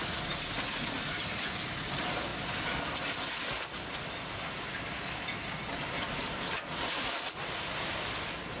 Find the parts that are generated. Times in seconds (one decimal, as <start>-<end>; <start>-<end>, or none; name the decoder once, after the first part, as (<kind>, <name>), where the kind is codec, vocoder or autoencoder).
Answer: none